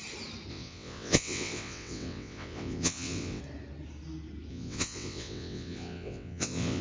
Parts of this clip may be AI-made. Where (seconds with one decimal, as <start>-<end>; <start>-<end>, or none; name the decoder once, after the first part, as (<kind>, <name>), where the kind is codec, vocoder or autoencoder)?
0.5-3.4 (vocoder, WaveNeXt); 4.5-6.8